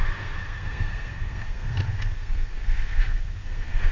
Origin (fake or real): fake